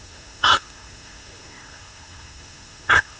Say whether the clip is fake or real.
fake